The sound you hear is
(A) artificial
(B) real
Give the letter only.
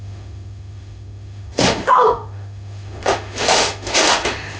A